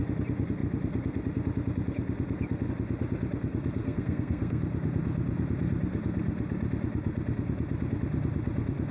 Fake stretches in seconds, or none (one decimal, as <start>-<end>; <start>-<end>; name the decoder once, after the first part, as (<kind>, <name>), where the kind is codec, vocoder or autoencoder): 3.8-4.6 (codec, SNAC)